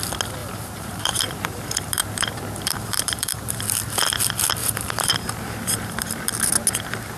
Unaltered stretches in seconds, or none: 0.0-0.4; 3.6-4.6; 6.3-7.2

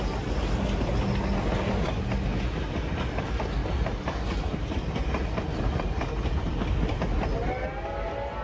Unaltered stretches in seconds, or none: 0.0-3.6; 7.0-8.4

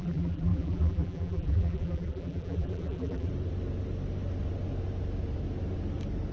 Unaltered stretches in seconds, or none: 3.3-6.3